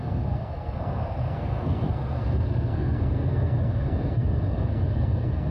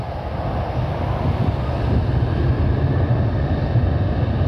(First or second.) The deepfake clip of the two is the first